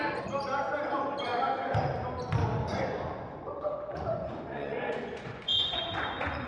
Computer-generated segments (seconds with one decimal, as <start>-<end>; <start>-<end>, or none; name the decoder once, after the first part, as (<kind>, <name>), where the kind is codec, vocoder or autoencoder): 2.7-6.5 (vocoder, Vocos)